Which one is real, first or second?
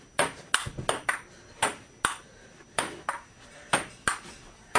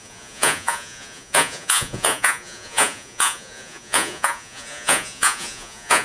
first